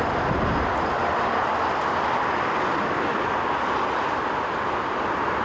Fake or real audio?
real